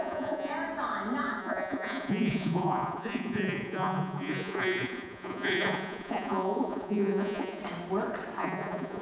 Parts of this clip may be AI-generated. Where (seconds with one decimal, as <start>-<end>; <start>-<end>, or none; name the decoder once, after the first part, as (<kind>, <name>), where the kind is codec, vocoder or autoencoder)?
0.0-0.5 (vocoder, Vocos); 1.4-7.6; 8.4-9.0